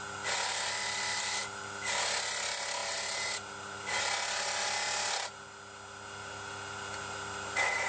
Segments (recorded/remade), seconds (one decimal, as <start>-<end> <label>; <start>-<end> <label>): 0.0-1.4 recorded; 1.4-2.0 remade; 2.0-7.9 recorded